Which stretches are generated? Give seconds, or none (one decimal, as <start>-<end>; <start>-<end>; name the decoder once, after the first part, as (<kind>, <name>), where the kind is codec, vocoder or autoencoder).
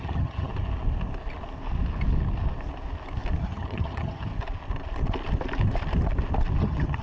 0.0-0.5 (vocoder, HiFi-GAN); 3.4-4.3; 6.6-7.0